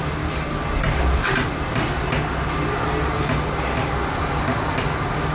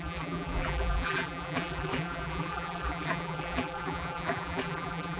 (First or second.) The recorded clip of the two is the first